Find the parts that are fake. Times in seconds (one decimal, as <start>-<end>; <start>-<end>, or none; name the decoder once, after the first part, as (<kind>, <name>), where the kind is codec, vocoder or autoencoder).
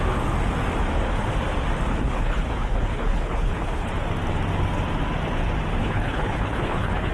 1.9-3.9 (codec, HILCodec); 5.8-7.1